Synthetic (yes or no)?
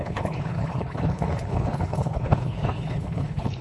yes